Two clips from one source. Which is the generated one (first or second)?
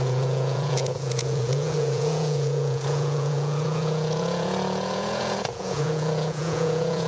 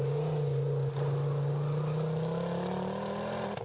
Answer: first